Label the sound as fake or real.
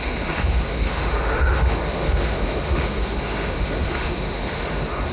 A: fake